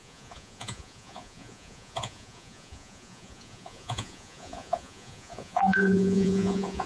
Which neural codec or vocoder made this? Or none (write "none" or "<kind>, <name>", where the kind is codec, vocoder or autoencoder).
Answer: vocoder, Vocos